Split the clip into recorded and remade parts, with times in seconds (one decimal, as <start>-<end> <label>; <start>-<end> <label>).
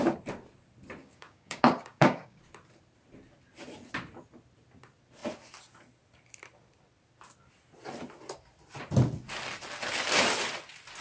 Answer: 0.0-1.0 recorded; 1.0-2.4 remade; 2.4-11.0 recorded